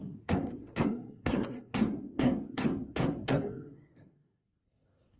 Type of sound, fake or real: fake